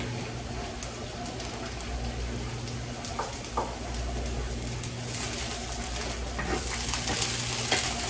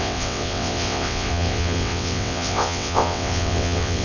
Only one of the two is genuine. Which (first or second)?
first